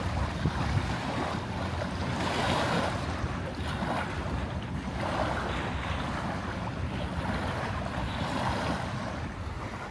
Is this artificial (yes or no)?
no